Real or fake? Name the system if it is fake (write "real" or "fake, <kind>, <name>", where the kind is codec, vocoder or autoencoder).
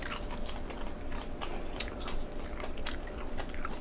real